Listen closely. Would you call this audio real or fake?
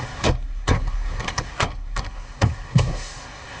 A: fake